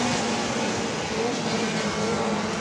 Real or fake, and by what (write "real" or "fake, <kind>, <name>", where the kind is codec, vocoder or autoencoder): real